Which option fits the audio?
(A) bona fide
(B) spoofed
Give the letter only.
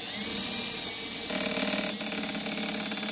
A